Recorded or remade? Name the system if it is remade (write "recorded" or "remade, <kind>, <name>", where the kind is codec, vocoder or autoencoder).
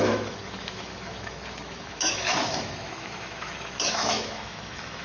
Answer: remade, autoencoder, DAC-VAE